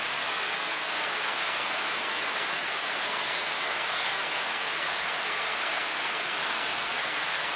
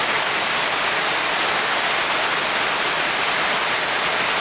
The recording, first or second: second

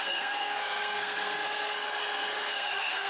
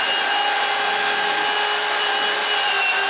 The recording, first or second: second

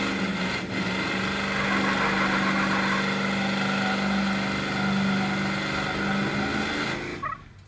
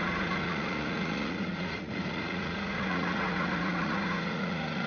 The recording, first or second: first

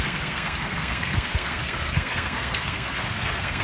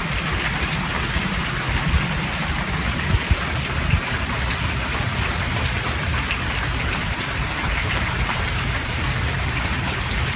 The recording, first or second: second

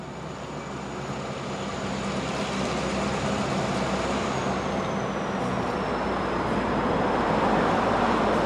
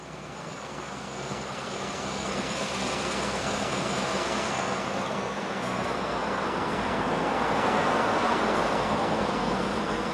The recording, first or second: first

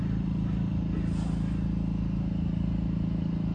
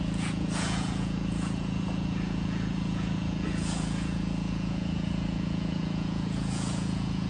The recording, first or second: first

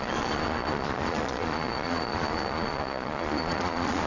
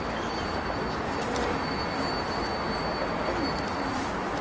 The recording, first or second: second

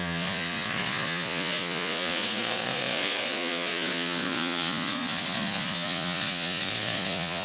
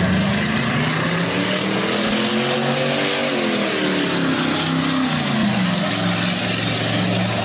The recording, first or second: second